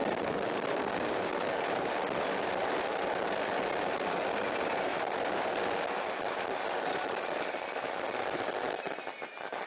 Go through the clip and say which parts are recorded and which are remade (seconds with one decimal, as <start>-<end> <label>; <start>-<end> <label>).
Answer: 0.0-1.3 remade; 1.3-9.7 recorded